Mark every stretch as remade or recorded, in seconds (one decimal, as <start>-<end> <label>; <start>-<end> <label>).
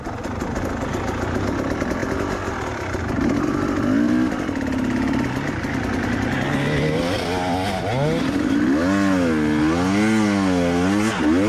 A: 0.0-11.5 recorded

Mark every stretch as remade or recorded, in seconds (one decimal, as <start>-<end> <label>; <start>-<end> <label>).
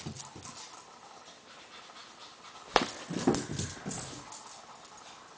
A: 0.0-2.0 recorded; 2.0-3.1 remade; 3.1-5.4 recorded